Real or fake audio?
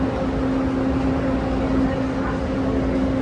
real